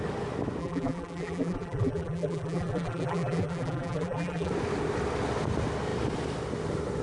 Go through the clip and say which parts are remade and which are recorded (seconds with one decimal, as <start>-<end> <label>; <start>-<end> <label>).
0.0-0.6 recorded; 0.6-4.5 remade; 4.5-7.0 recorded